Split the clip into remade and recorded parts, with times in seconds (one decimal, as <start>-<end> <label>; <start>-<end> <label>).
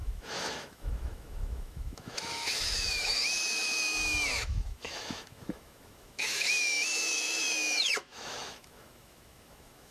0.0-9.9 remade